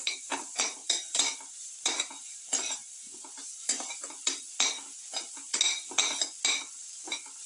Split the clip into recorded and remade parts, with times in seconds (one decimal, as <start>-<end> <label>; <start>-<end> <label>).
0.0-3.1 remade; 3.1-7.5 recorded